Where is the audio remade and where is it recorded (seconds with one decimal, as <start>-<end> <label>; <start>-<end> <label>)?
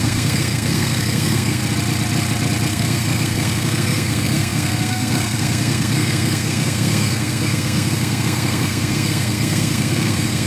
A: 0.0-1.6 remade; 1.6-2.7 recorded; 2.7-10.5 remade